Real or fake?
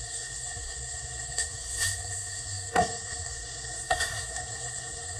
fake